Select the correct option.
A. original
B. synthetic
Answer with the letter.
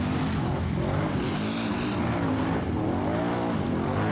A